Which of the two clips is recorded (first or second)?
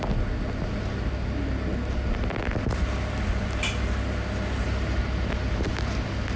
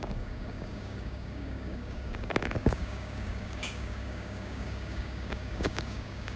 first